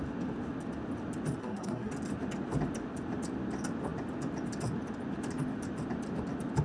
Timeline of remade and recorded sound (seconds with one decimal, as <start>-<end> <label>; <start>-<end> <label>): 0.0-1.4 recorded; 1.4-1.9 remade; 1.9-6.6 recorded